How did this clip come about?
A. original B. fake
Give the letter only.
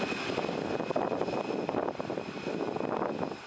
A